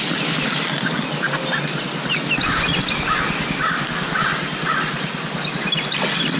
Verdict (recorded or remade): recorded